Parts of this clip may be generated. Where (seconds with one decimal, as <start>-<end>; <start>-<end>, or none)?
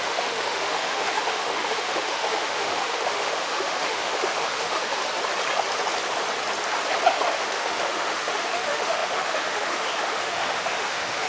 0.0-5.0; 7.3-11.3